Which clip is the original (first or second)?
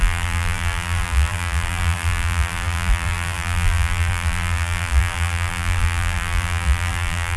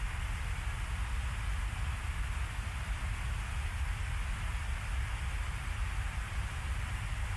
second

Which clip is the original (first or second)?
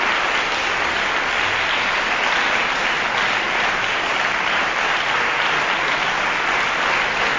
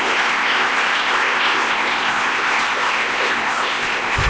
first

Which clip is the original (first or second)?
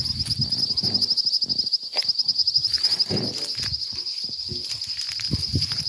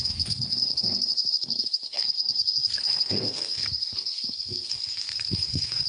first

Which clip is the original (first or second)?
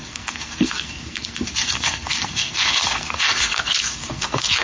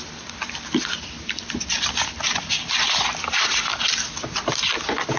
second